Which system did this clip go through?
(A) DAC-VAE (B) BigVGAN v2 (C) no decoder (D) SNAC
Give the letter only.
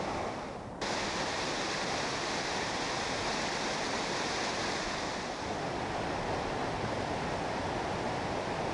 C